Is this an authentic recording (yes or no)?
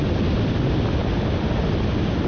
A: yes